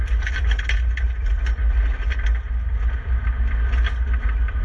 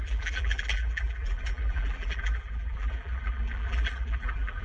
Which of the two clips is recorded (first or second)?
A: first